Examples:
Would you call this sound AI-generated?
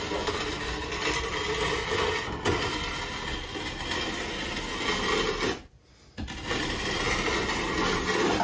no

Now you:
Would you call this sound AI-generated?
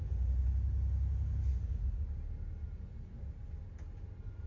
no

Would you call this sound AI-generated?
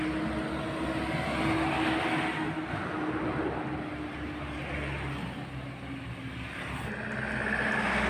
no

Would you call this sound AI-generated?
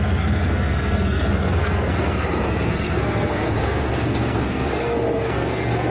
yes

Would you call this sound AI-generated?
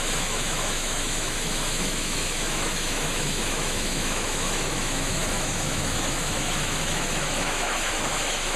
yes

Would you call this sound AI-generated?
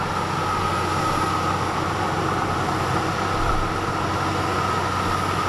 no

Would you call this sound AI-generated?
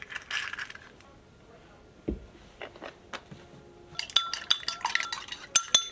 no